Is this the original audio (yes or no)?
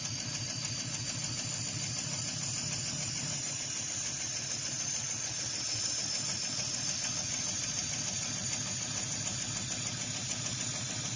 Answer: yes